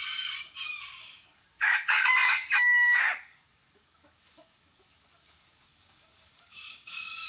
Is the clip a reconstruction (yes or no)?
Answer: yes